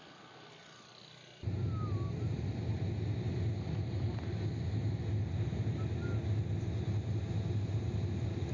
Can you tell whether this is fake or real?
real